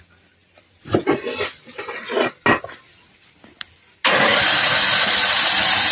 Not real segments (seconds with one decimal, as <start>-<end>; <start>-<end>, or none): none